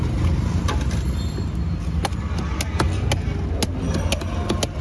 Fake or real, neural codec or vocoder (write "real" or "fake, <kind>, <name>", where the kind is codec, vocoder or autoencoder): real